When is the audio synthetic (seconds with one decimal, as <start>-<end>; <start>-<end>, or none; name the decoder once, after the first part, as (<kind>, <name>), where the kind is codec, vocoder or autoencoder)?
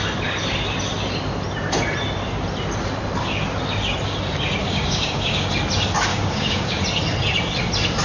4.6-5.5 (codec, DAC); 6.1-6.8